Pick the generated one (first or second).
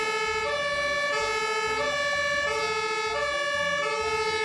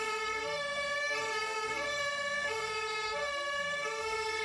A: second